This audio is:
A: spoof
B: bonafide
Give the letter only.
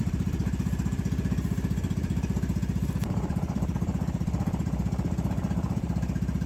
A